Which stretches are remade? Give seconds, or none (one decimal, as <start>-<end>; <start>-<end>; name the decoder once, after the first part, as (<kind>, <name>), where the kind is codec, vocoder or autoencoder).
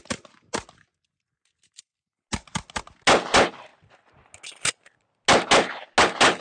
none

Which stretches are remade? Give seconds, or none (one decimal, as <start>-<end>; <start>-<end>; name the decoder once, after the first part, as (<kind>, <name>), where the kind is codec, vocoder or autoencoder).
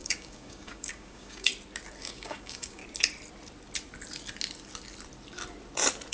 0.0-1.5 (codec, DAC); 2.0-2.8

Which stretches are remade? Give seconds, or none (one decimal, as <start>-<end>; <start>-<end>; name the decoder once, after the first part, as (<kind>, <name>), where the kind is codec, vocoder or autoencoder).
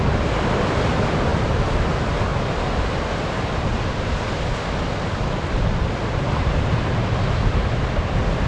none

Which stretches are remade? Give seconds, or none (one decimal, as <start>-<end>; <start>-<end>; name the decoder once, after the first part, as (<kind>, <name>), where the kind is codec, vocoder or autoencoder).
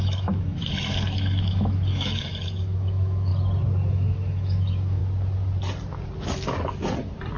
0.0-3.3 (autoencoder, DAC-VAE); 3.9-5.0